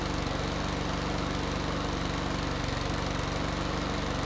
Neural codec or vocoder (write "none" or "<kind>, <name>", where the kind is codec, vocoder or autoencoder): none